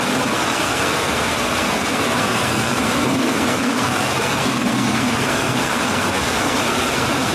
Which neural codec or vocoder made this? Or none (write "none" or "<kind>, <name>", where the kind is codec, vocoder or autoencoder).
codec, SNAC